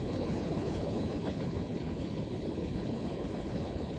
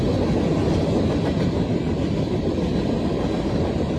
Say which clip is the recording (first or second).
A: second